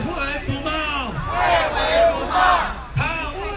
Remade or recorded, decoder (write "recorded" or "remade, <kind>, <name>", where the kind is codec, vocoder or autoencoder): recorded